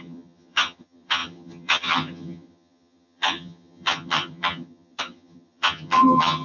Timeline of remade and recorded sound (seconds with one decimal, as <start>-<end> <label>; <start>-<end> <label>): 0.0-6.4 remade